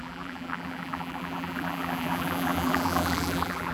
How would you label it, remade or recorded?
remade